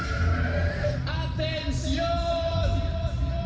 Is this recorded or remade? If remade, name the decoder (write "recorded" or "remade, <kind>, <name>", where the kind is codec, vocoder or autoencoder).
recorded